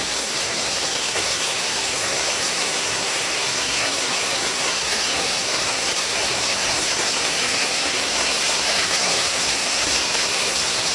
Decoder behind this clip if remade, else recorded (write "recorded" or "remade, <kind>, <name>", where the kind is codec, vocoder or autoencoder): remade, codec, SNAC